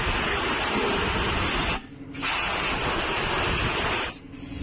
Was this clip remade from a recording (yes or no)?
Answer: no